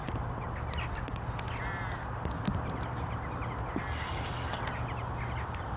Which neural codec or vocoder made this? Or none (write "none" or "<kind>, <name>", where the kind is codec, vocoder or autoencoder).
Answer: none